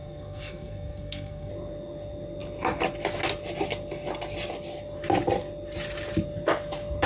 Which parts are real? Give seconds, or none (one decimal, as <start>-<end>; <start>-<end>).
1.5-7.0